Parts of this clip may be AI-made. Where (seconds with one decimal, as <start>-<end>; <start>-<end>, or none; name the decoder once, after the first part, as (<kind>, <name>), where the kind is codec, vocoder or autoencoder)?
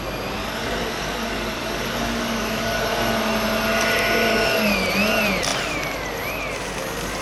0.4-3.0 (codec, DAC); 4.3-4.9